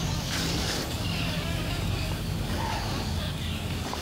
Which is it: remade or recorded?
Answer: remade